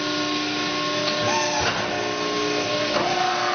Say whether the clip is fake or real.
real